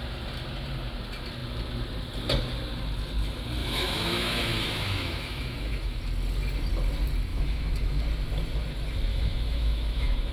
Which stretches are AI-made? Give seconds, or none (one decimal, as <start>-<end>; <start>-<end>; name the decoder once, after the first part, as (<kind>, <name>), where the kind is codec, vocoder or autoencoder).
3.6-6.0 (autoencoder, DAC-VAE); 7.3-8.0; 9.1-10.3